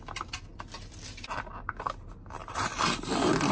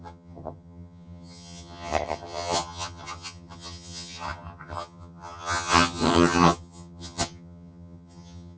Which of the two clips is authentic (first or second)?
first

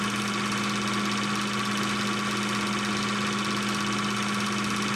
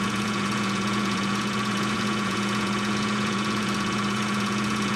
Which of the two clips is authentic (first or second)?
first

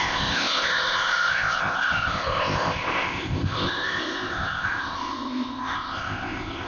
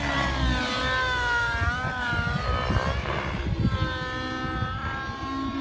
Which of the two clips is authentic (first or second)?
second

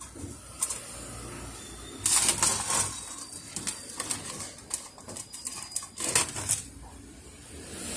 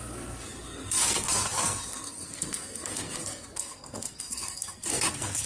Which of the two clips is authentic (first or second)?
first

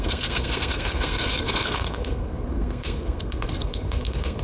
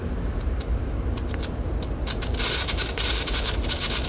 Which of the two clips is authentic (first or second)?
second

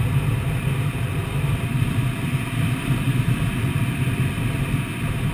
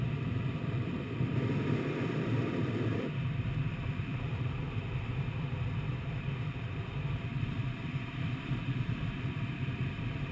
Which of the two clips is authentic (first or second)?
first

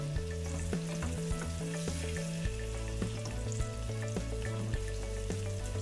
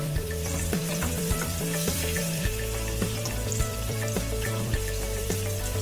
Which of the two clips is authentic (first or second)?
first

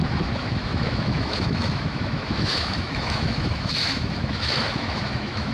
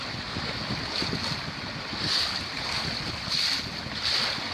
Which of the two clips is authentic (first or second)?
second